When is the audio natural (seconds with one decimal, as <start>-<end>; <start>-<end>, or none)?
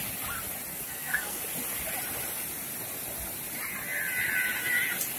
0.0-0.7; 1.4-5.2